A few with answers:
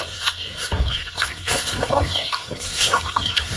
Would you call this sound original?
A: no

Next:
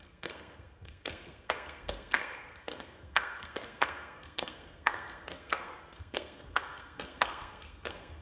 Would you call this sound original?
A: no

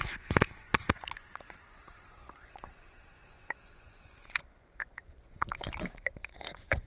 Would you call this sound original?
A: no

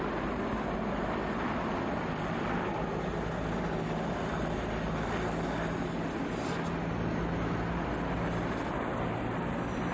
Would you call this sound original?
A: yes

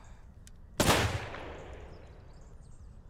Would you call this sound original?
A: yes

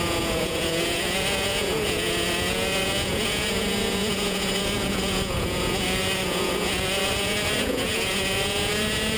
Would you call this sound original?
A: no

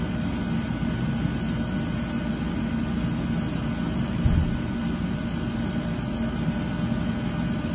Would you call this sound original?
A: yes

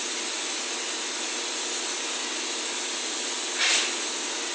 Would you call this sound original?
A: yes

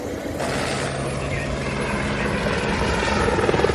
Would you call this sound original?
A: yes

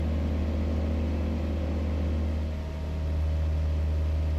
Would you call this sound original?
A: yes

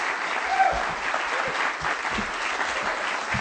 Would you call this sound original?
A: yes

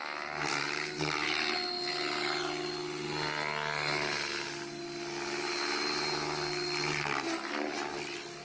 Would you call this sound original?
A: yes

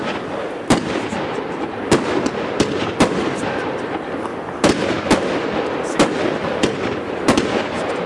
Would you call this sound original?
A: yes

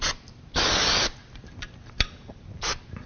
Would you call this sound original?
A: yes